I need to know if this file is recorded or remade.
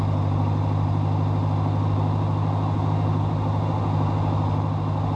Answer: recorded